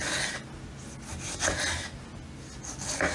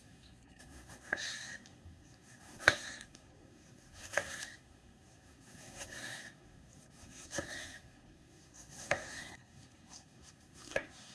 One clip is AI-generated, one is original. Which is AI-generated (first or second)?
second